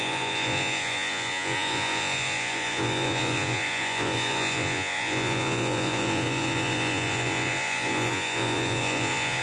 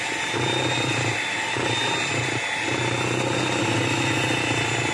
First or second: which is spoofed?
first